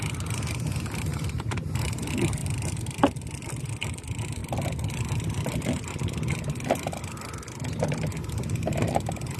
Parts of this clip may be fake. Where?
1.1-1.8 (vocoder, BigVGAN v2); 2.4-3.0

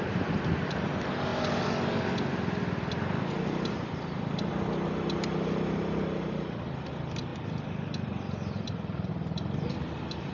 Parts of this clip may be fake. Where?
7.3-9.1 (vocoder, BigVGAN v2)

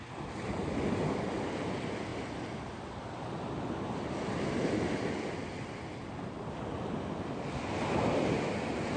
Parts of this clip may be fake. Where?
none

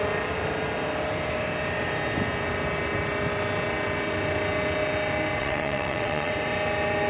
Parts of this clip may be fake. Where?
5.4-6.3 (vocoder, WaveNeXt)

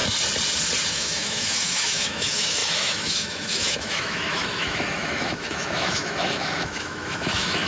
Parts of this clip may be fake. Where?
0.9-7.7 (autoencoder, DAC-VAE)

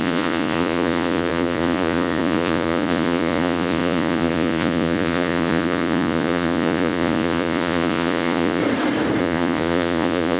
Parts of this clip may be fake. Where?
0.0-8.6 (vocoder, Vocos); 9.2-10.4

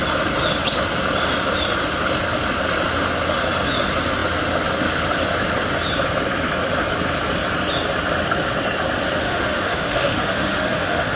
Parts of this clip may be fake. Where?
9.2-11.2 (autoencoder, DAC-VAE)

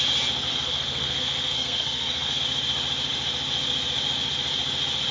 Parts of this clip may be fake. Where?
0.5-2.4 (codec, SNAC)